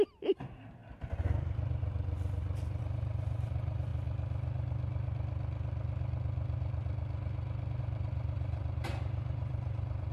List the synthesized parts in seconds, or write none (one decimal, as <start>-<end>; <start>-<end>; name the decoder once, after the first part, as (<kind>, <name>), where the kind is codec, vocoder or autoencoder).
0.0-0.8 (vocoder, BigVGAN v2); 2.8-3.9; 7.8-10.1